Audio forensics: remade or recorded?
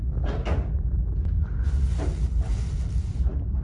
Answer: recorded